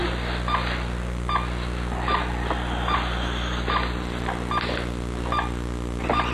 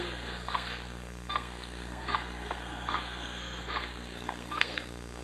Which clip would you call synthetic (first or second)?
second